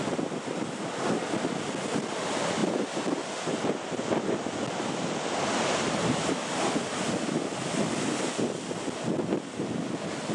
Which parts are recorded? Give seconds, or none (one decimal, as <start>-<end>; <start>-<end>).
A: 0.0-10.3